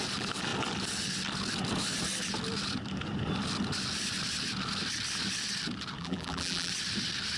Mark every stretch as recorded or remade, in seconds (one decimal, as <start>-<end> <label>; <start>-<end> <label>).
0.0-6.0 recorded; 6.0-6.7 remade; 6.7-7.4 recorded